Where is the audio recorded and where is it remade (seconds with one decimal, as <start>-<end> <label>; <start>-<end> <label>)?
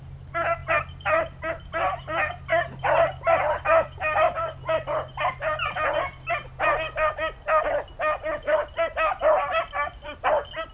0.0-10.7 recorded